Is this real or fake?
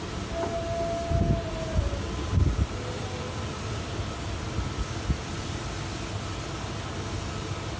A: real